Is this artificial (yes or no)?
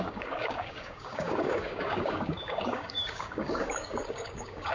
yes